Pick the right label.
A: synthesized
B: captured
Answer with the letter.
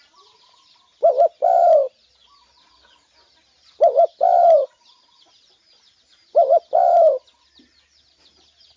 B